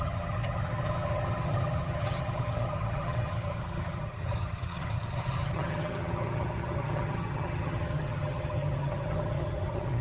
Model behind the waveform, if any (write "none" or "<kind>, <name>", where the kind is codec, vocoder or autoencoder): vocoder, HiFi-GAN